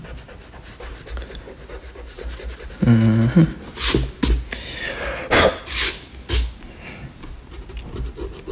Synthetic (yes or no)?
no